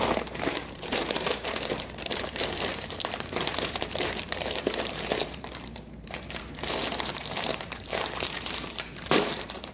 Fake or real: fake